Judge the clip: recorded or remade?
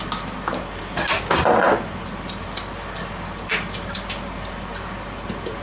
recorded